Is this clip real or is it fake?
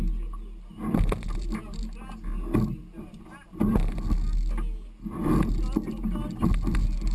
real